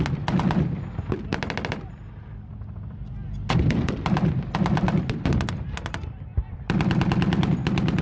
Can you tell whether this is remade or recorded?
recorded